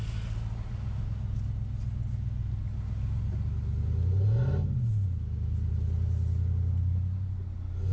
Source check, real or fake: real